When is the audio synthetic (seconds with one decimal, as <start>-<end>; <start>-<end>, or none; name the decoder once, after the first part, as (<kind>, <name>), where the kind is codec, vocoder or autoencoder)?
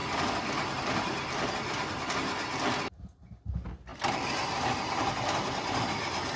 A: 0.0-2.1 (vocoder, BigVGAN v2); 3.9-5.8